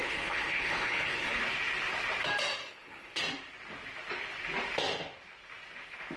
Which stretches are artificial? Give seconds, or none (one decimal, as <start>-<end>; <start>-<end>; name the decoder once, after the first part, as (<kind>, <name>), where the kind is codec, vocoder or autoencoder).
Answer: 0.0-1.4 (codec, HILCodec); 2.6-3.2

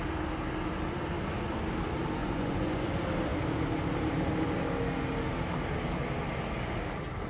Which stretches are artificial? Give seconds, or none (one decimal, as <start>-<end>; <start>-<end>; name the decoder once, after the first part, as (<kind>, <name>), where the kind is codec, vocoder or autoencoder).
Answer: 2.2-2.9 (vocoder, Vocos)

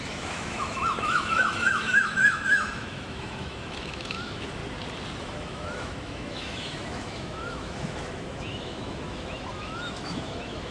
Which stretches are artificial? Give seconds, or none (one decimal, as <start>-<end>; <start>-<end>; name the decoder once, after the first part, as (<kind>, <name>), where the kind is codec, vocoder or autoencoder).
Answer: 0.0-4.6 (autoencoder, DAC-VAE); 5.2-10.7